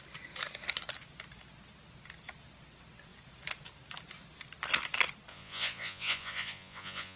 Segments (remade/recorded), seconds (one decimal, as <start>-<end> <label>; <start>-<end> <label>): 0.0-5.3 recorded; 5.3-7.2 remade